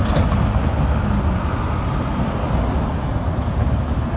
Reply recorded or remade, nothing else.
recorded